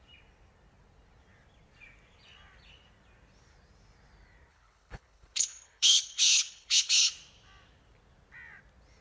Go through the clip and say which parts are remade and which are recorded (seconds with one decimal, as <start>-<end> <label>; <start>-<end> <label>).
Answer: 0.0-4.5 recorded; 4.5-7.1 remade; 7.1-9.0 recorded